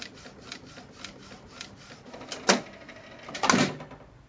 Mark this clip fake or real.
real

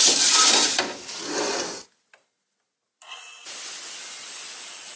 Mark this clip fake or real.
real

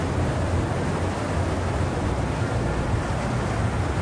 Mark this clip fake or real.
real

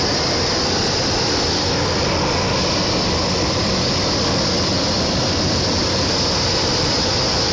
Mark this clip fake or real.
real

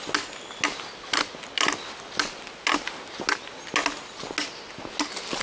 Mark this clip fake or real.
real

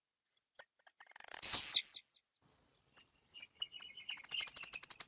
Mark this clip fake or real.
real